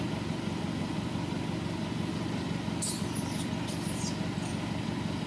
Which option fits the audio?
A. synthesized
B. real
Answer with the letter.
B